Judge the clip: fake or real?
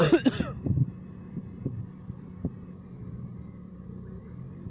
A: real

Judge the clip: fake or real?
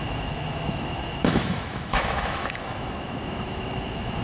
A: fake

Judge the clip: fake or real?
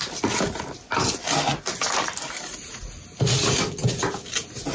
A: real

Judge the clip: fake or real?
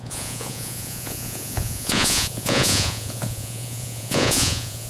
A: fake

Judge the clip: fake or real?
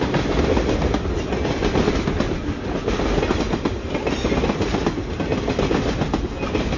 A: real